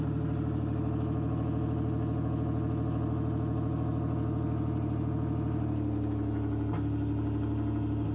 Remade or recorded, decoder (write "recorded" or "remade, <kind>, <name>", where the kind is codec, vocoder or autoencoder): recorded